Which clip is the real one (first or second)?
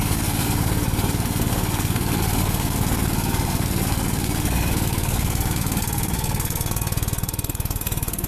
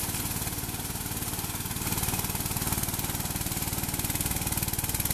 second